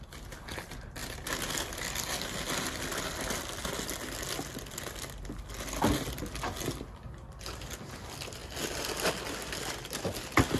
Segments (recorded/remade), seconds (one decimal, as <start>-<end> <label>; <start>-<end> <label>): 0.0-10.6 recorded